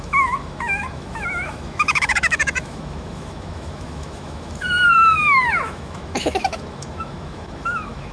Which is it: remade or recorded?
remade